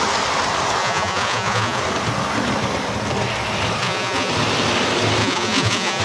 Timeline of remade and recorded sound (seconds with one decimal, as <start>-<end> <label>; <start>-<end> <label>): 0.0-0.8 recorded; 0.8-1.8 remade; 1.8-3.8 recorded; 3.8-4.3 remade; 4.3-5.2 recorded; 5.2-6.0 remade